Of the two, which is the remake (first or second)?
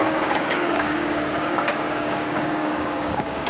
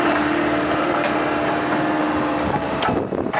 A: first